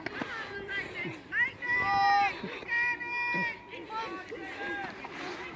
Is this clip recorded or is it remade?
recorded